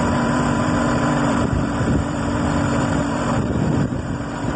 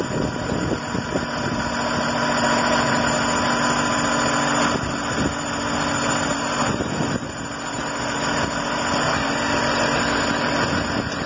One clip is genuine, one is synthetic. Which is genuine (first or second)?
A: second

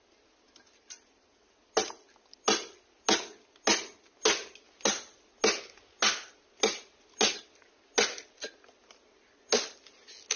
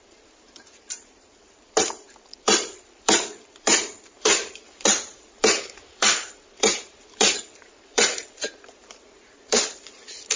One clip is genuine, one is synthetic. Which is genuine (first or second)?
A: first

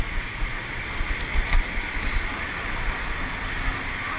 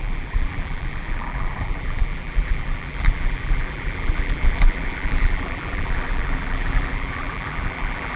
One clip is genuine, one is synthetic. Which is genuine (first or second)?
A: first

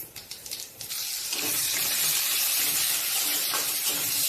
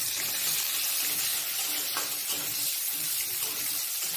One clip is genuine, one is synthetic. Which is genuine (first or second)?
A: second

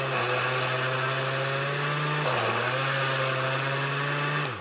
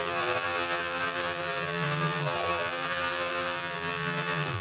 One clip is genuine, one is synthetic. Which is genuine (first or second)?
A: first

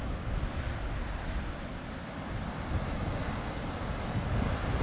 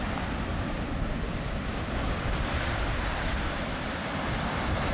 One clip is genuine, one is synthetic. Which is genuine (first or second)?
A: first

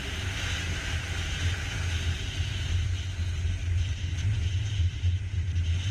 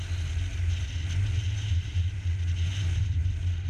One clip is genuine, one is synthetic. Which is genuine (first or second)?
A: second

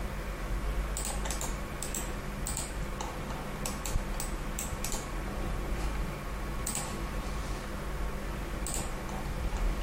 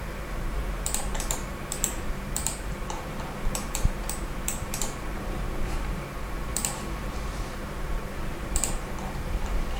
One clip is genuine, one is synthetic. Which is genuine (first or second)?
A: first